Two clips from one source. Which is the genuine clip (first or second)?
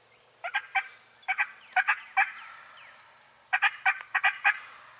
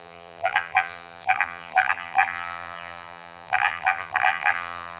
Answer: first